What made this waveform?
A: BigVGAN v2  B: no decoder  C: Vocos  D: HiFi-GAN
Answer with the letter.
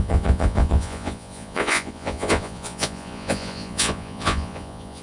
C